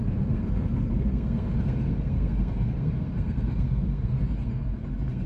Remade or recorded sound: remade